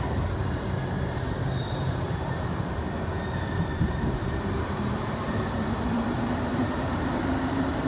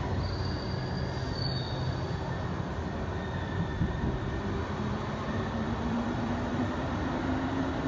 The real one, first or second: second